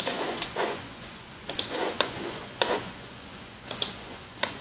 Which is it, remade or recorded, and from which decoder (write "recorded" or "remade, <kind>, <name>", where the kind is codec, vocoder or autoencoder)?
remade, vocoder, Vocos